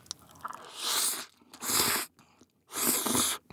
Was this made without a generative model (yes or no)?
yes